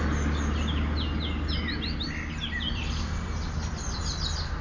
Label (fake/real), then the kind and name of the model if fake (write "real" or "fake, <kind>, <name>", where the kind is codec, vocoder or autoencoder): real